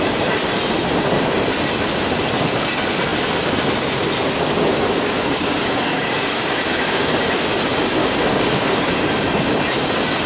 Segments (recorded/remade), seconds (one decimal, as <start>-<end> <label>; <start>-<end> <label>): 0.0-4.7 recorded; 4.7-7.2 remade; 7.2-8.0 recorded; 8.0-8.9 remade; 8.9-10.3 recorded